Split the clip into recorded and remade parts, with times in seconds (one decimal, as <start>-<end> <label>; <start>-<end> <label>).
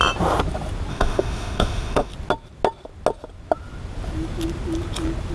0.0-0.9 recorded; 0.9-2.1 remade; 2.1-5.3 recorded